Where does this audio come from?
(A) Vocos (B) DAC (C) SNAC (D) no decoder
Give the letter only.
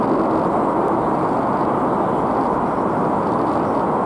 D